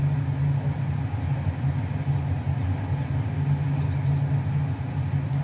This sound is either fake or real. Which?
real